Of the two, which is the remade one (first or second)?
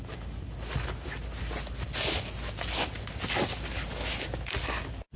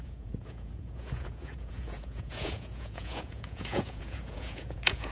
second